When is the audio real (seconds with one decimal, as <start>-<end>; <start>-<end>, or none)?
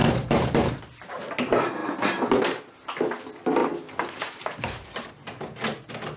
0.0-6.2